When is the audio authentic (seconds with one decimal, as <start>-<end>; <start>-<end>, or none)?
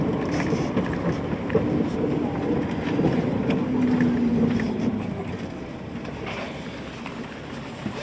0.0-4.3; 4.9-8.0